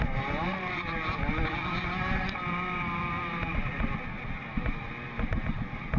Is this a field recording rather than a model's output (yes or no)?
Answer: yes